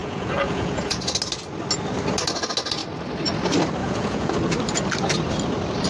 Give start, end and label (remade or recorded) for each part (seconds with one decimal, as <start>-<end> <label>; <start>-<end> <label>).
0.0-1.0 remade; 1.0-3.8 recorded; 3.8-4.3 remade; 4.3-5.9 recorded